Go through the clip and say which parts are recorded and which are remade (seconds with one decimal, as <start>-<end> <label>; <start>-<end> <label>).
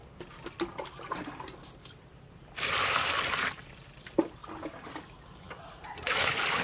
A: 0.0-2.5 recorded; 2.5-4.4 remade; 4.4-6.6 recorded